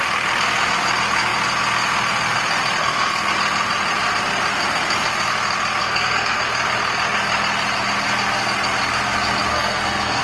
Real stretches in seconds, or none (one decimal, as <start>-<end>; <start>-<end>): 0.0-2.8; 3.3-5.8; 6.4-9.5